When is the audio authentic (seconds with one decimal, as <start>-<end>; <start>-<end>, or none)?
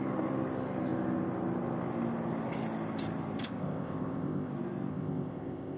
0.0-3.4; 4.5-4.9